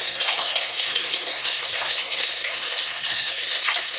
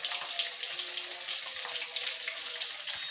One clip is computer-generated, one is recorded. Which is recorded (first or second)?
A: second